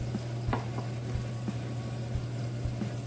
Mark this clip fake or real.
real